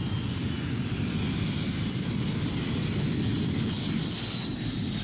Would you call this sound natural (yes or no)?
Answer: yes